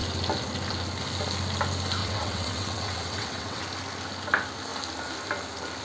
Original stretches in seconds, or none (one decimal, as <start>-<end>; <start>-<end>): 0.0-2.0; 3.6-5.8